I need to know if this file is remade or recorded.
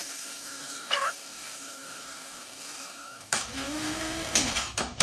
remade